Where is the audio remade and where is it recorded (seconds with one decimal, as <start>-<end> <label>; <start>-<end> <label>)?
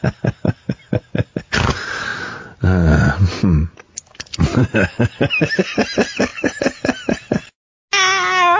0.0-8.6 recorded